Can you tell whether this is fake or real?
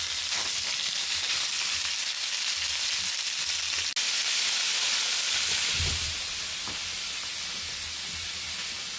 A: real